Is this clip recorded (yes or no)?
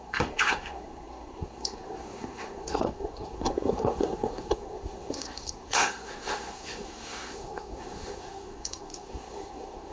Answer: no